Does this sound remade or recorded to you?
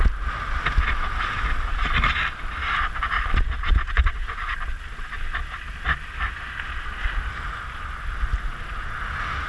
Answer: recorded